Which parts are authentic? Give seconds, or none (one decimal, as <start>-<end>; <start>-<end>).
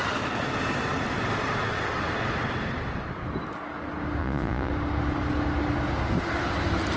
0.0-4.2; 4.7-7.0